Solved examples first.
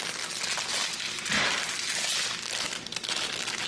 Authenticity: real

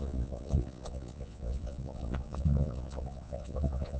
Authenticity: fake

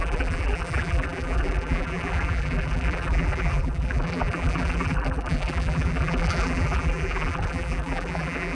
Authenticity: fake